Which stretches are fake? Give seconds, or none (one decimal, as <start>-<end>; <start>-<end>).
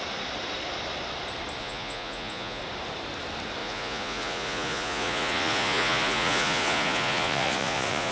1.6-2.6; 3.6-8.1